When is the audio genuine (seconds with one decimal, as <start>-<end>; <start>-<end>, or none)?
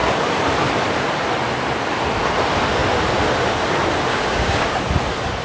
0.0-4.1; 4.7-5.4